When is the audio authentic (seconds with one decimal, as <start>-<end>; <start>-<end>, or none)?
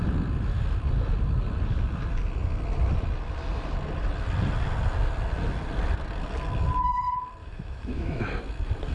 0.0-7.4; 8.2-8.9